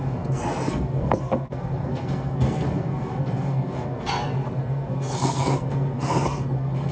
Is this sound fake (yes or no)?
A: yes